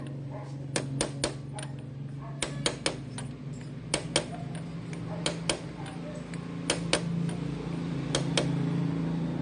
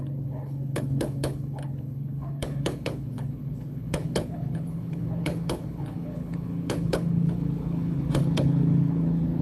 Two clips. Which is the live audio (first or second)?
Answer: first